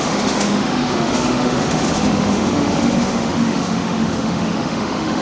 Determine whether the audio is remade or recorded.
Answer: remade